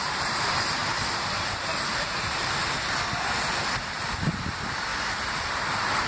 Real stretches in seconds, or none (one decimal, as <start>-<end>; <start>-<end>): 0.8-4.2; 4.9-5.5